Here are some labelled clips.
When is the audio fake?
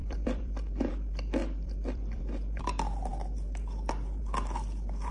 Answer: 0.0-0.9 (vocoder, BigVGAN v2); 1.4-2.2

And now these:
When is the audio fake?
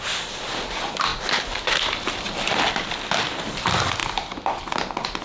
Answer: 1.1-2.4 (vocoder, BigVGAN v2); 4.0-4.6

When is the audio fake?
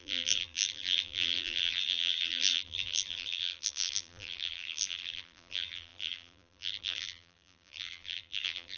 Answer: 0.0-8.8 (vocoder, BigVGAN v2)